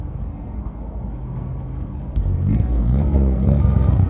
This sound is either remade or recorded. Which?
remade